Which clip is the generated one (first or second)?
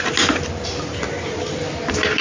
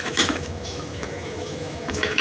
second